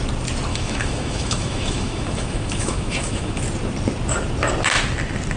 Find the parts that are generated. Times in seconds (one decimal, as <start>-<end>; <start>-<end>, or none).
0.5-3.3